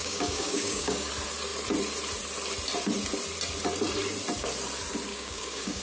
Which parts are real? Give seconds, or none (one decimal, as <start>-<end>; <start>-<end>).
1.1-5.1